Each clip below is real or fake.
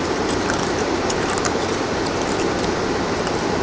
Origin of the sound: fake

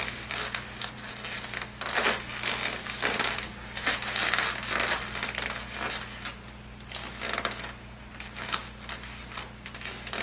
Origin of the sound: real